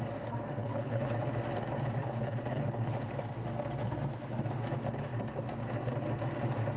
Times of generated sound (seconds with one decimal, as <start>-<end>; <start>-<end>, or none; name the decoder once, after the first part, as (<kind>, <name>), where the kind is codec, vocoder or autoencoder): 0.6-1.1 (codec, HILCodec); 2.0-3.1

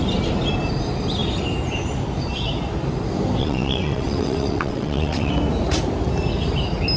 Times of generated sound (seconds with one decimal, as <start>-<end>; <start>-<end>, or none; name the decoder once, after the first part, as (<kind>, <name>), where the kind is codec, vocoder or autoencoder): 3.4-5.3 (vocoder, WaveNeXt)

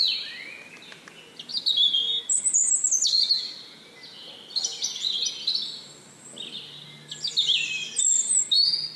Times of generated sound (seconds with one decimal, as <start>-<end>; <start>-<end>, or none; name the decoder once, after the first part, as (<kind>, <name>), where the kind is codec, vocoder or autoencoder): none

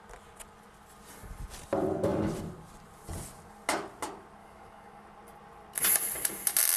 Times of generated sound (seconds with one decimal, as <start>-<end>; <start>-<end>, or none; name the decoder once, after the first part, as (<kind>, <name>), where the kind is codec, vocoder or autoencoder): 4.4-5.0 (codec, DAC)